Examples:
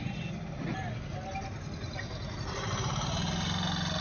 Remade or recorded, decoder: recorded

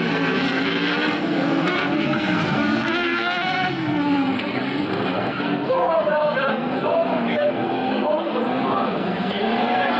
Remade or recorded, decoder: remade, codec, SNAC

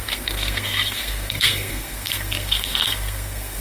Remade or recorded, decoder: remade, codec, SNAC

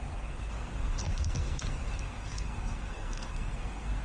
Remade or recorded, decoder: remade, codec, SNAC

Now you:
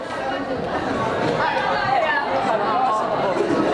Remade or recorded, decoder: recorded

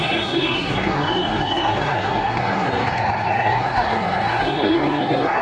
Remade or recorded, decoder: remade, codec, SNAC